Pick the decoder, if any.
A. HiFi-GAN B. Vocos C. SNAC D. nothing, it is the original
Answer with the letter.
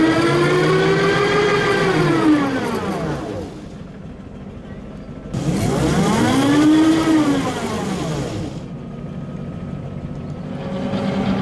D